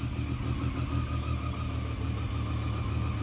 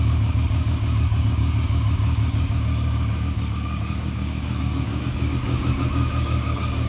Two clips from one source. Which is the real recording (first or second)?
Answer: first